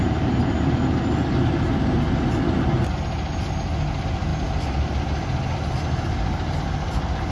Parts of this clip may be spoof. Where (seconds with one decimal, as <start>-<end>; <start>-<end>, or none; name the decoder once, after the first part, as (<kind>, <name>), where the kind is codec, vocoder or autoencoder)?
none